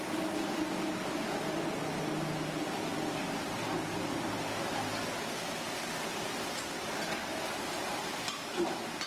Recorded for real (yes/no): yes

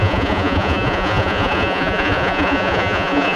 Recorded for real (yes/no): no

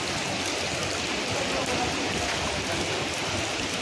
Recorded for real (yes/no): yes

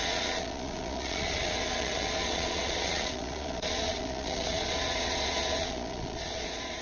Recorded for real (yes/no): no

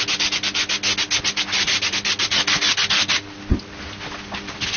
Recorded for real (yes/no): yes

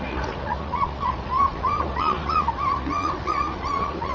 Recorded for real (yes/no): no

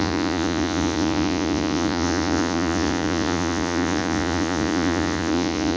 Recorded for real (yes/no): no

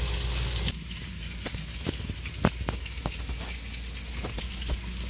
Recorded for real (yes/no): yes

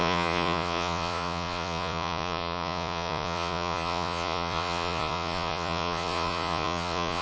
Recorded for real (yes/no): no